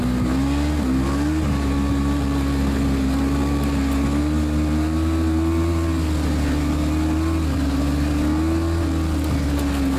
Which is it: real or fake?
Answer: real